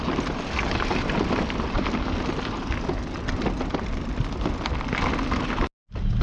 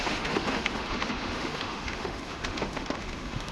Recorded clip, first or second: first